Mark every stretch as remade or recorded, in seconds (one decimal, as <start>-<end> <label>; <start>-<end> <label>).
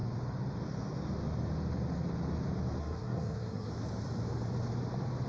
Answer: 0.0-2.8 recorded; 2.8-3.7 remade; 3.7-5.3 recorded